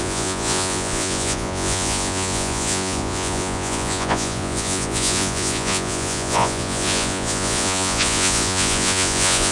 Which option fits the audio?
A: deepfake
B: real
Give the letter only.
A